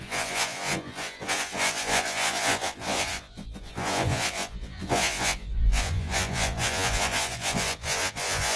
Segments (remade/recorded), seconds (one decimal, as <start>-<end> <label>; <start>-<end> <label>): 0.0-8.6 remade